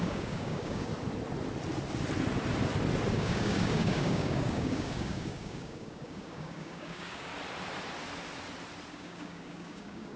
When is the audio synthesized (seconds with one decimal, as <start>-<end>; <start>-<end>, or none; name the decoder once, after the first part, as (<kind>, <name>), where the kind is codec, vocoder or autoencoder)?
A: 0.0-0.9 (codec, DAC); 3.1-7.3; 8.9-10.2